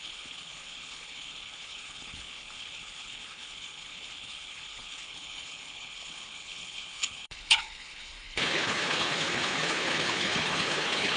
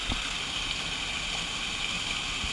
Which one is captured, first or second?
second